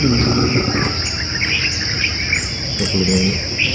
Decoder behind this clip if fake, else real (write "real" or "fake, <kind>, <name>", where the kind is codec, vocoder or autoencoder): real